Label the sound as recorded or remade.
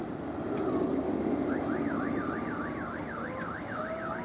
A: recorded